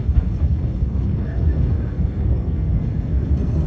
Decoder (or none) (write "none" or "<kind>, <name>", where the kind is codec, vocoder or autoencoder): codec, SNAC